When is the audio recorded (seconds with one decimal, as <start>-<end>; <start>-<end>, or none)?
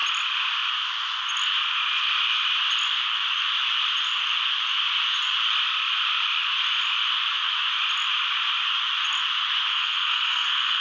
0.0-9.7